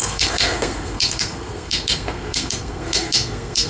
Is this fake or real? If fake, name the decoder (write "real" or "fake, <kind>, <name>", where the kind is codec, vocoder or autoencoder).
fake, codec, SNAC